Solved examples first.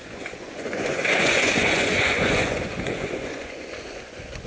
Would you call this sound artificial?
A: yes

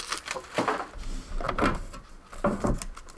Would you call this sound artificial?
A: no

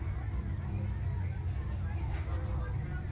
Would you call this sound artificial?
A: no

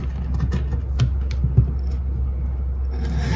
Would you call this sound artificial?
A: no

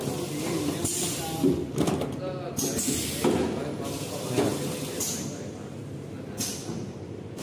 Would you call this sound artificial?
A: no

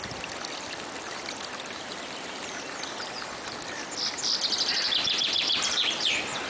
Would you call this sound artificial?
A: no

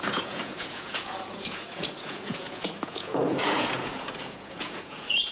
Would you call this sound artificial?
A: yes